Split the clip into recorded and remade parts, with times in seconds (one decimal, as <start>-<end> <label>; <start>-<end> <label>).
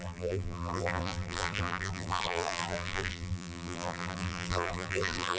0.0-5.4 remade